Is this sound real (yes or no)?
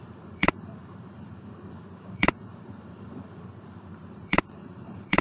no